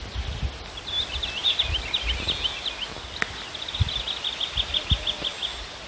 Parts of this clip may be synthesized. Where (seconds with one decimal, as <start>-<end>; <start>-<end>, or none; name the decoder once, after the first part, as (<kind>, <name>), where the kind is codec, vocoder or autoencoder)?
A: none